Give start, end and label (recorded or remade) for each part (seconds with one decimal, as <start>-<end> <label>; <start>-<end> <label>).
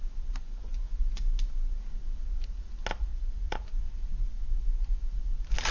0.0-0.4 recorded; 0.4-1.2 remade; 1.2-3.1 recorded; 3.1-3.8 remade; 3.8-5.7 recorded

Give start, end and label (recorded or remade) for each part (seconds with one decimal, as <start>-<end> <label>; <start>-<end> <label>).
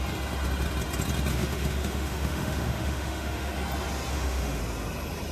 0.0-1.3 recorded; 1.3-3.5 remade; 3.5-4.1 recorded; 4.1-4.6 remade; 4.6-5.3 recorded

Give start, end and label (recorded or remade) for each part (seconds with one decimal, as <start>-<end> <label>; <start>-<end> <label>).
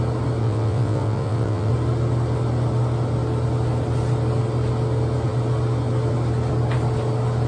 0.0-0.4 recorded; 0.4-1.7 remade; 1.7-7.5 recorded